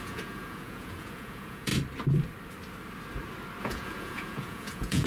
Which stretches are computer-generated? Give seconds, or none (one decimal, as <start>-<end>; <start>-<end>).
0.0-1.7; 3.6-5.1